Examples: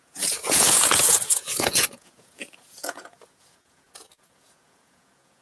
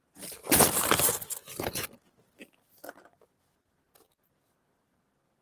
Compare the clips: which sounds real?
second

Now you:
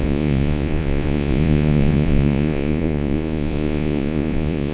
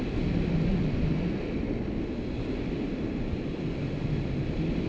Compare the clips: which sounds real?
second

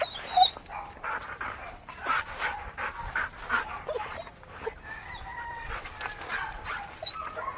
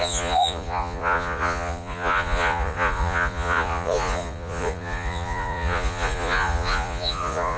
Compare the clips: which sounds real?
first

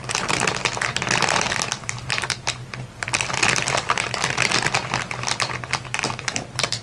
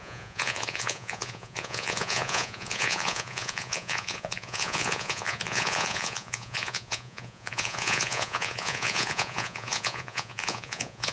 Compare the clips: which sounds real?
first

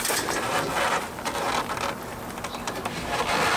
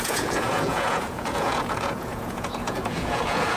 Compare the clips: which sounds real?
first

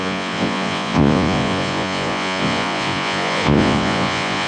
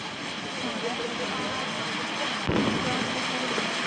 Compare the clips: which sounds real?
second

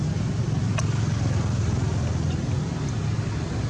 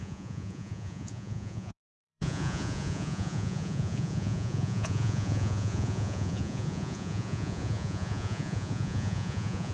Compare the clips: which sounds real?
first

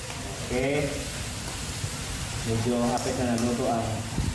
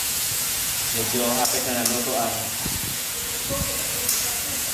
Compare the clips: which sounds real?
first